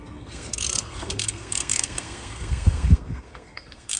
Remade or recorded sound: remade